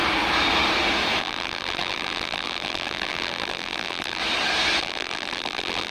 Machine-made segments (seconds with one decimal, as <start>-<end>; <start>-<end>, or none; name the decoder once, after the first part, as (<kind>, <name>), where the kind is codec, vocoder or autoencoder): 1.2-4.2 (vocoder, BigVGAN v2); 4.8-5.9